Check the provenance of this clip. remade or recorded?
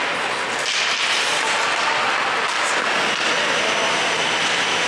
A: recorded